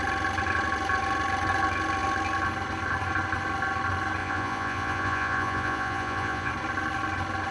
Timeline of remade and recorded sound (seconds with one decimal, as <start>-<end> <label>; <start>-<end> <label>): 0.0-4.2 recorded; 4.2-6.5 remade; 6.5-7.5 recorded